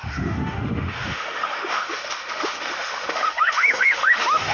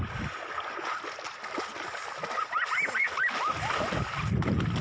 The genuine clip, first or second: second